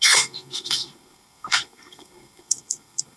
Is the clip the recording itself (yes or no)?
no